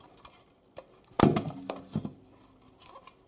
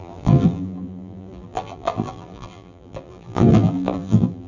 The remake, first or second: second